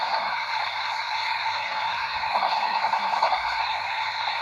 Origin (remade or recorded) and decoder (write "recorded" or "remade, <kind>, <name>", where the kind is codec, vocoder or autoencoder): remade, codec, SNAC